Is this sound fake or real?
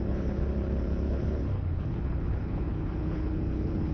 fake